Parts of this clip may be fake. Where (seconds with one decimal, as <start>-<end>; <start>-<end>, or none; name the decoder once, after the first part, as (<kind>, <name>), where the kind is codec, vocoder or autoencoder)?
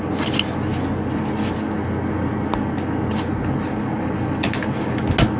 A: none